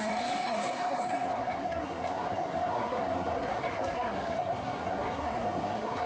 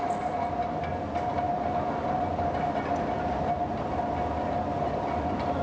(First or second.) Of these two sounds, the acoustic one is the second